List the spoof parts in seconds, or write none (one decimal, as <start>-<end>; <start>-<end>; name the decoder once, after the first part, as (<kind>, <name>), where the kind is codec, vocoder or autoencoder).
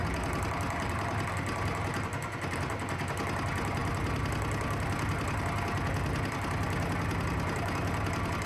none